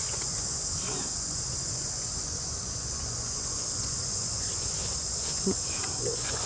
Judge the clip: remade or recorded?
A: remade